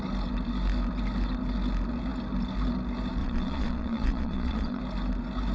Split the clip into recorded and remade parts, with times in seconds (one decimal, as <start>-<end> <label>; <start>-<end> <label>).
0.0-3.2 recorded; 3.2-4.8 remade; 4.8-5.5 recorded